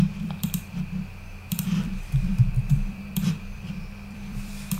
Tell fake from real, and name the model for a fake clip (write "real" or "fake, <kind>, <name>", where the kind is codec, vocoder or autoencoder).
fake, vocoder, BigVGAN v2